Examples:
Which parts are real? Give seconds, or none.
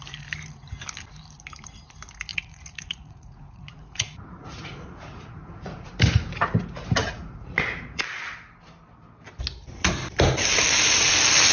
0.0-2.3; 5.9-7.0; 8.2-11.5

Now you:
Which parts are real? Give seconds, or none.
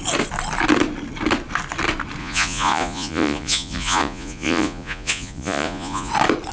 0.0-2.2; 6.1-6.5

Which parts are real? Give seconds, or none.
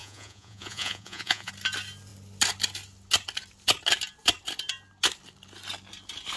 1.5-6.4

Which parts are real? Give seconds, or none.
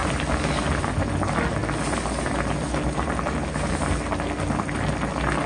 0.0-5.5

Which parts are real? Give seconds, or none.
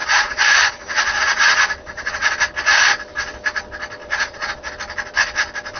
2.3-4.0; 4.7-5.8